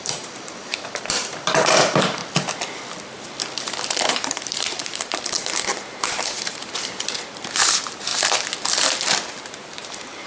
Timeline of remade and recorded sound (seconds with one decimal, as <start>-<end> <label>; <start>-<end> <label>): 0.0-2.2 remade; 2.2-4.1 recorded; 4.1-8.1 remade; 8.1-9.4 recorded; 9.4-10.3 remade